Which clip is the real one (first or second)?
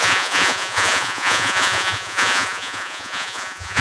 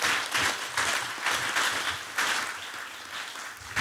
second